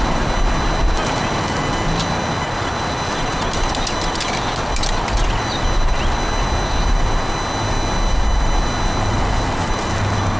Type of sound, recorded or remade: recorded